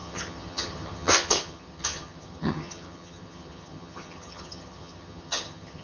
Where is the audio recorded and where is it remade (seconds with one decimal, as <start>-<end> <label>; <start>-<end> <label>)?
0.0-5.8 remade